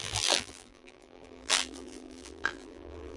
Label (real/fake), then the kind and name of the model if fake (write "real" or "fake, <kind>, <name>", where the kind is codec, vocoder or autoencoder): fake, vocoder, BigVGAN v2